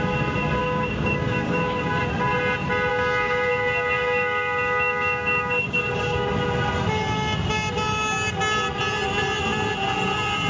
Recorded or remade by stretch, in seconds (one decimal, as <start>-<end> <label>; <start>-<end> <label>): 0.0-0.6 recorded; 0.6-2.0 remade; 2.0-2.9 recorded; 2.9-6.3 remade; 6.3-10.5 recorded